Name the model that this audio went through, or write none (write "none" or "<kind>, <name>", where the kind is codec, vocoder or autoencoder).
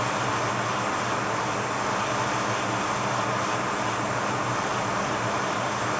none